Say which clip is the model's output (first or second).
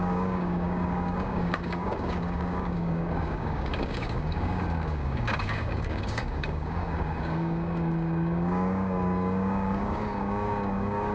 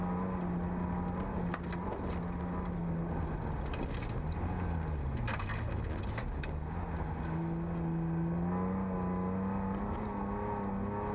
first